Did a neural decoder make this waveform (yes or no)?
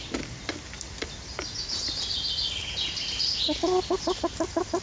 no